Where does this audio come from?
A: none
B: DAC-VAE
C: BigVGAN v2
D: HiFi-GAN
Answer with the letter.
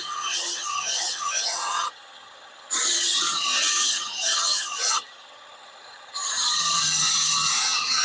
D